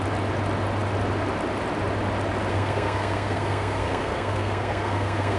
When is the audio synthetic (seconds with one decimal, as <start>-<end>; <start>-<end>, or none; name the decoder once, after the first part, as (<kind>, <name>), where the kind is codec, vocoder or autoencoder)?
2.5-5.4 (codec, SNAC)